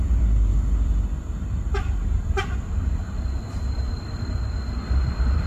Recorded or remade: remade